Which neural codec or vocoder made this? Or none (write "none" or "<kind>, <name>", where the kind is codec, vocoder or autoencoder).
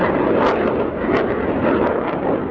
none